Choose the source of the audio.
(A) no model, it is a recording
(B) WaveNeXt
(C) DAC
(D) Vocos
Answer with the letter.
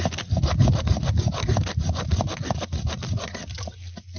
A